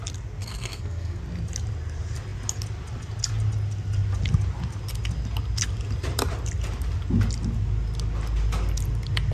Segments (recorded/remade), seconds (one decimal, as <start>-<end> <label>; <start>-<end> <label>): 0.0-0.4 recorded; 0.4-1.2 remade; 1.2-9.3 recorded

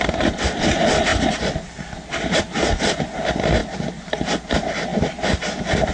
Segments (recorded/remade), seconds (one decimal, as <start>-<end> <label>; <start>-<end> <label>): 0.0-5.9 recorded

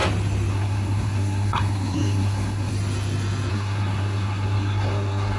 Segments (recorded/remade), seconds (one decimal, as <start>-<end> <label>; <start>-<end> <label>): 0.0-0.5 recorded; 0.5-2.7 remade; 2.7-3.5 recorded; 3.5-5.4 remade

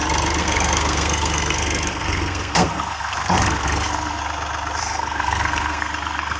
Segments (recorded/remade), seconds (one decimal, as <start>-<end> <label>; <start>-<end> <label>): 0.0-0.4 recorded; 0.4-4.2 remade; 4.2-4.8 recorded; 4.8-6.4 remade

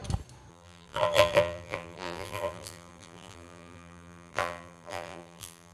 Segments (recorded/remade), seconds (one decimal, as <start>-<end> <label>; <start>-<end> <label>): 0.0-0.5 recorded; 0.5-5.7 remade